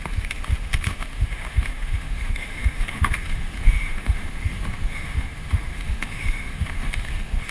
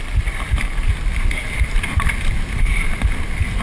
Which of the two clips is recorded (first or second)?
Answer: second